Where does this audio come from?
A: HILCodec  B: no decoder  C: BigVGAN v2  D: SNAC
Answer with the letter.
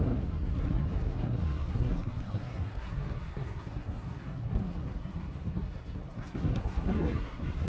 D